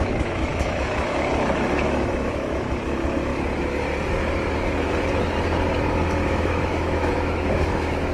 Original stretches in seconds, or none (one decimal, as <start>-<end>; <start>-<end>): 3.3-5.9